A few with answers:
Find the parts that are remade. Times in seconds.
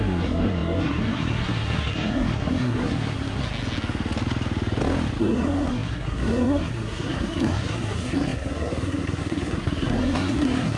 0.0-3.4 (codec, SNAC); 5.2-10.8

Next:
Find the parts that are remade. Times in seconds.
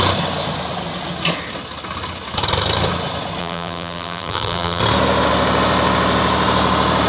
3.4-4.8 (vocoder, BigVGAN v2)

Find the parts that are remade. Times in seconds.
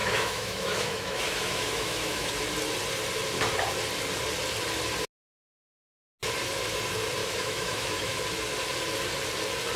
0.0-2.3 (autoencoder, DAC-VAE); 7.2-8.2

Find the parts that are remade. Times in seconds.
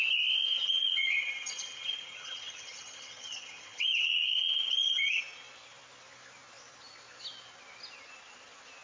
0.5-5.2 (vocoder, HiFi-GAN)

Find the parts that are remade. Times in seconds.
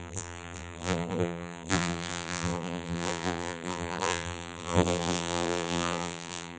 0.0-6.6 (vocoder, BigVGAN v2)